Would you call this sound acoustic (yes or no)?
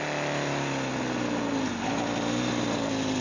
yes